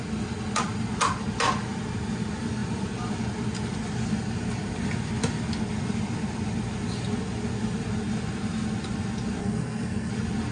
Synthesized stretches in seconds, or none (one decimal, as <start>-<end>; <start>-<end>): 9.4-10.1